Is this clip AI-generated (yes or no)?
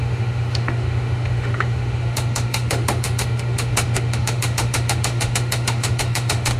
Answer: yes